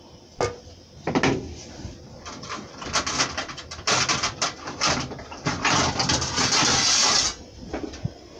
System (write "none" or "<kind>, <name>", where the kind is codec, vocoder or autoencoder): none